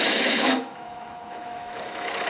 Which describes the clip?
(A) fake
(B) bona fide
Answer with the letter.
A